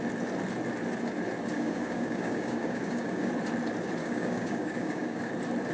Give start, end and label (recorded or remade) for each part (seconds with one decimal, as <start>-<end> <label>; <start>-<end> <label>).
0.0-1.5 recorded; 1.5-3.3 remade; 3.3-4.0 recorded; 4.0-5.2 remade; 5.2-5.7 recorded